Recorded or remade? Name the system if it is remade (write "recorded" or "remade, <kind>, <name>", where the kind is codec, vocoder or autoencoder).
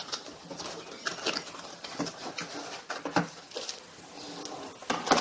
recorded